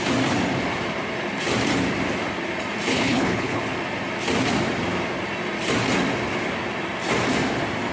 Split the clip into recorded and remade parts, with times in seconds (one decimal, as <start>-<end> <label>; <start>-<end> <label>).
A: 0.0-2.9 recorded; 2.9-3.6 remade; 3.6-7.9 recorded